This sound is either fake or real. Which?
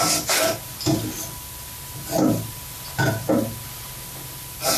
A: real